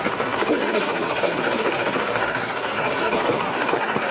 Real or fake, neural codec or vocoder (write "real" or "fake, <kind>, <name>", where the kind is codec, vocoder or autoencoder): fake, codec, SNAC